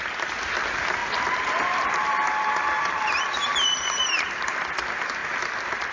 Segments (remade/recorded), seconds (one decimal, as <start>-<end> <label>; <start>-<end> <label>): 0.0-5.9 recorded